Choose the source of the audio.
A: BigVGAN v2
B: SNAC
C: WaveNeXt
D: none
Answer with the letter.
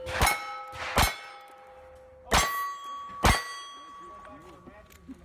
D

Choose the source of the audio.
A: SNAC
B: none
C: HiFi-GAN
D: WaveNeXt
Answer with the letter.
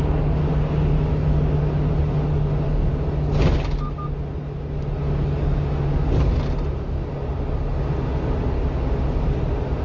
B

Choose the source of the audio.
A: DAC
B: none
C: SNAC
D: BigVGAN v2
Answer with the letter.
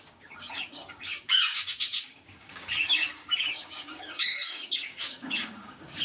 A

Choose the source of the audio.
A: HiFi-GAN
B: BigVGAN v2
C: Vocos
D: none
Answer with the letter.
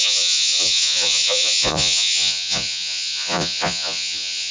C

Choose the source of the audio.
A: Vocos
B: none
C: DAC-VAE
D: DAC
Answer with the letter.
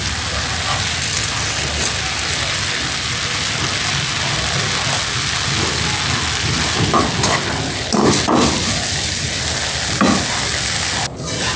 B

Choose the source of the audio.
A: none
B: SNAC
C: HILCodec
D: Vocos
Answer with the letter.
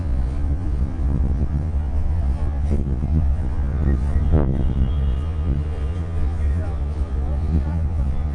D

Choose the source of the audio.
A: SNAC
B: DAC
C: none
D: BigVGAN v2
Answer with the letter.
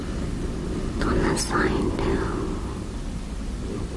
C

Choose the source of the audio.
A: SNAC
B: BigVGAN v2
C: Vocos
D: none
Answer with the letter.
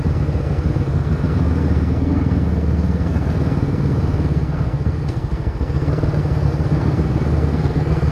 A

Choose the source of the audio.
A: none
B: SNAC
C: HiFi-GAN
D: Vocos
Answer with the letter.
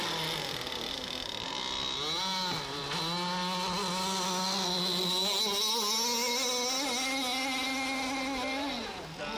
A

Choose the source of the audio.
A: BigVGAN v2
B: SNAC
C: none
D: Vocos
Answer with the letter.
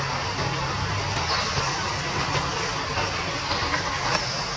C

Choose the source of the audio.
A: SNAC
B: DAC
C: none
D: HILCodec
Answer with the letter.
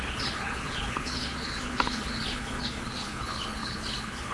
D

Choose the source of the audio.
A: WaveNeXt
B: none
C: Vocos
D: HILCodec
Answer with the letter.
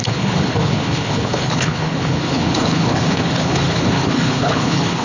D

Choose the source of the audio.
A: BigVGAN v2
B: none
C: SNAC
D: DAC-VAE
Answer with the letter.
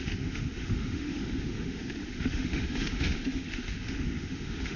D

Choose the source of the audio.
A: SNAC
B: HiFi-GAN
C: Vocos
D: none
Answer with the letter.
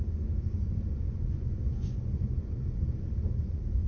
C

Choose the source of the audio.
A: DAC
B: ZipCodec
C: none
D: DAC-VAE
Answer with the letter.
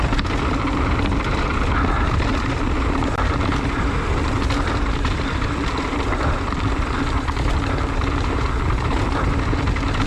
C